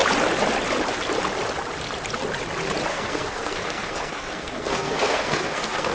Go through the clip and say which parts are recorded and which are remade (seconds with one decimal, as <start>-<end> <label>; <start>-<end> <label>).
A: 0.0-2.9 recorded; 2.9-5.9 remade